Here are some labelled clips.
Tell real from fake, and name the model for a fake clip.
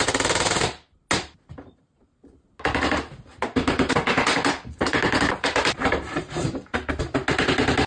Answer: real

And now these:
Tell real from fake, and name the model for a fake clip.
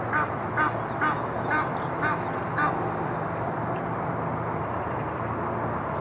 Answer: real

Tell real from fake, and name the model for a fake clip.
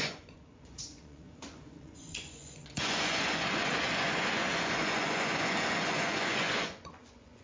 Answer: fake, vocoder, Vocos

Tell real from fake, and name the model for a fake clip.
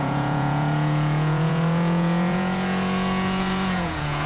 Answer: fake, vocoder, Vocos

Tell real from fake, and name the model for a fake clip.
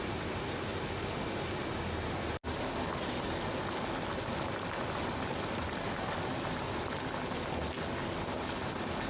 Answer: real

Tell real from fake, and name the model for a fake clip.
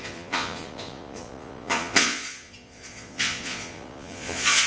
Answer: fake, vocoder, Vocos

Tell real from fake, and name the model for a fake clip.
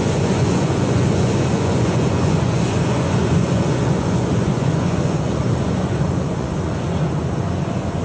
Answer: fake, vocoder, Vocos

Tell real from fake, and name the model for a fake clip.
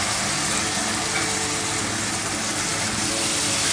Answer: real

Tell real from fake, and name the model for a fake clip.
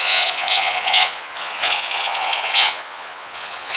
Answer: fake, vocoder, Vocos